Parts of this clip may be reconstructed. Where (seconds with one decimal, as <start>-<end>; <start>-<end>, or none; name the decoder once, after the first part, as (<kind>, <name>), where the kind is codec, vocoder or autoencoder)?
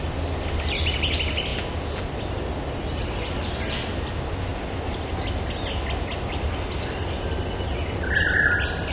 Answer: none